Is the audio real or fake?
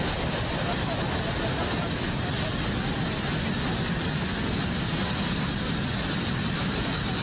real